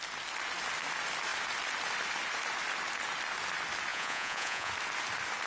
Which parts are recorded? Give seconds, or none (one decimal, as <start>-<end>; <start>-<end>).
0.0-3.9; 4.7-5.5